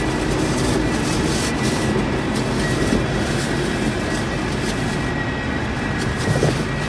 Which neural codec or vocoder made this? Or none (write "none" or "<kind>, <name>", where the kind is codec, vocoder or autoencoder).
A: none